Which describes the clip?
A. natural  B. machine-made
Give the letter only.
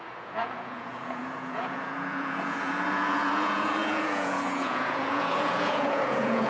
B